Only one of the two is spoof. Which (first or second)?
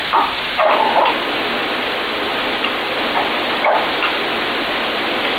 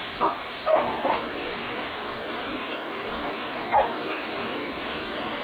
second